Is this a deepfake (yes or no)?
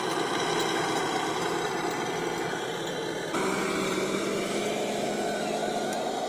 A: no